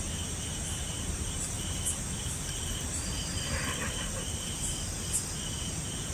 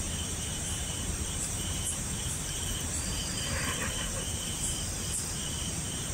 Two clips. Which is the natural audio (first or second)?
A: first